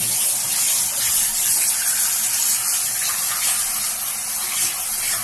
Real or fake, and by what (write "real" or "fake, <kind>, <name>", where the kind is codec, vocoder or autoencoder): real